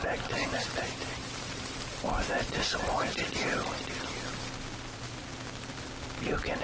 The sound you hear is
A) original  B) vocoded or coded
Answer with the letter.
A